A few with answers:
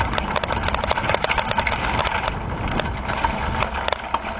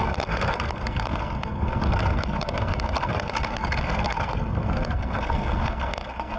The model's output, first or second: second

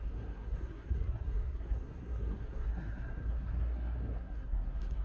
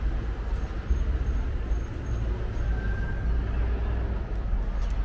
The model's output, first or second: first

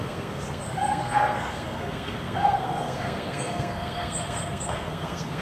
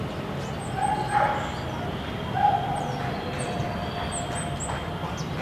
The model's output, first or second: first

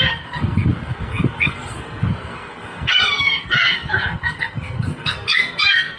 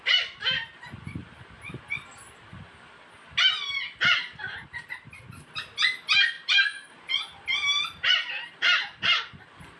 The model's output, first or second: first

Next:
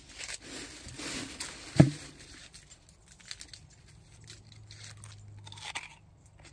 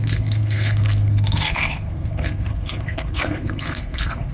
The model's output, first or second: second